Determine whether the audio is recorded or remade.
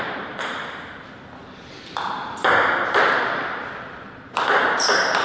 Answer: recorded